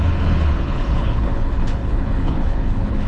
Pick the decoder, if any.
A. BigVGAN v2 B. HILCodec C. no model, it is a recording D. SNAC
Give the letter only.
B